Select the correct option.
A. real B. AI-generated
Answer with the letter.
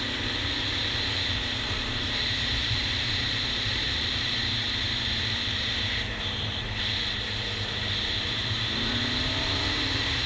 B